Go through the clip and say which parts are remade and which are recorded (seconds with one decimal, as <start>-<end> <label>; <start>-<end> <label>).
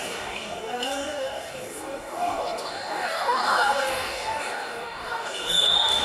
0.0-6.0 remade